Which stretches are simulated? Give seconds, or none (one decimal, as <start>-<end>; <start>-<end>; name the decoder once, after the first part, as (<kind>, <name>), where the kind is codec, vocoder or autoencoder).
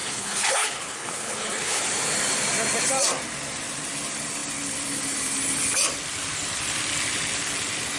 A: 0.0-1.8 (codec, HILCodec)